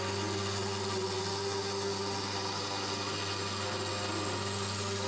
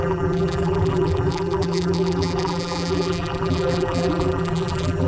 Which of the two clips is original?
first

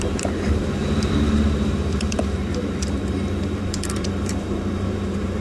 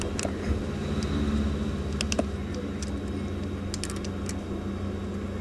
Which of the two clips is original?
second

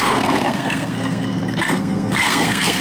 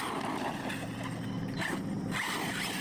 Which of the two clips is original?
second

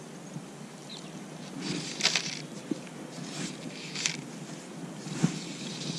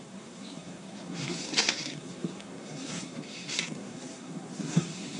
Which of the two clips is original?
first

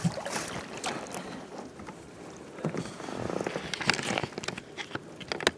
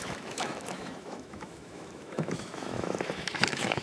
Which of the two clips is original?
first